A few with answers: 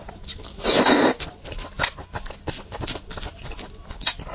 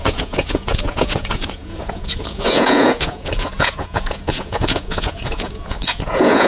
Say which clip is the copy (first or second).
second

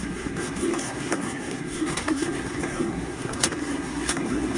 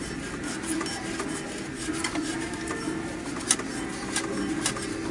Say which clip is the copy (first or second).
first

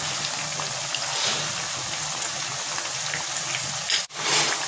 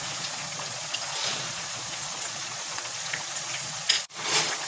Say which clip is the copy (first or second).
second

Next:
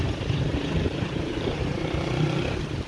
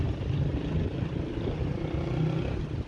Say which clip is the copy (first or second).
first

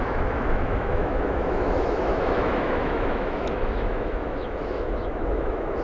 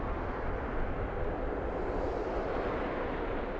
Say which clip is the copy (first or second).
first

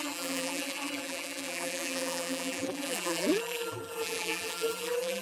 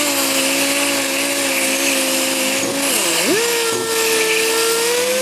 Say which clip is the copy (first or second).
first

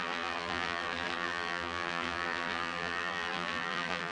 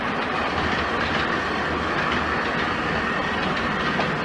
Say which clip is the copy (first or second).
first